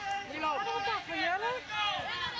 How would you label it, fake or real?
real